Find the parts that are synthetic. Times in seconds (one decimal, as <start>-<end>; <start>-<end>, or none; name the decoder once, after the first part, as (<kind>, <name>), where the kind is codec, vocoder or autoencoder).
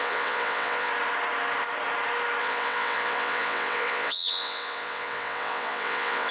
0.0-0.9 (vocoder, WaveNeXt); 2.4-6.3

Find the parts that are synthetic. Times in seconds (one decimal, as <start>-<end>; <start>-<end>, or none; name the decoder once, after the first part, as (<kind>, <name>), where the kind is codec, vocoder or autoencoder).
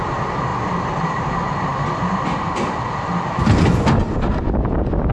none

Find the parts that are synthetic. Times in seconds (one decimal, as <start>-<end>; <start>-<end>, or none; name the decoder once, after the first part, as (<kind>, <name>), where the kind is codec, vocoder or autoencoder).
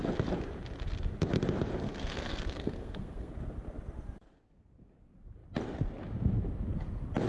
1.8-3.3 (codec, SNAC)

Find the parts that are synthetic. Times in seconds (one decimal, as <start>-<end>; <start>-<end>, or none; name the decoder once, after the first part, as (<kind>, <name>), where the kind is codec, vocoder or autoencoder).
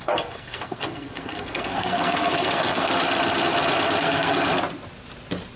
0.0-3.0 (codec, SNAC); 4.0-4.5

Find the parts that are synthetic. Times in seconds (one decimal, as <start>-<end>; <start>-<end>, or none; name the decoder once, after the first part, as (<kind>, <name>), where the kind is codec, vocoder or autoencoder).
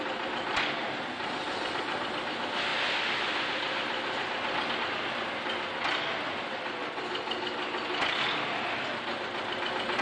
none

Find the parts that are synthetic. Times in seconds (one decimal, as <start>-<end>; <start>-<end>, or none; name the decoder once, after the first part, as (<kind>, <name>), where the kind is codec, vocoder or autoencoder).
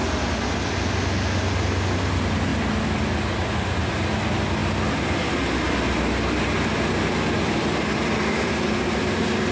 none